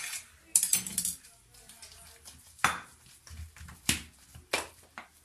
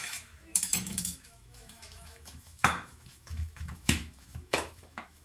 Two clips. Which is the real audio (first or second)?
first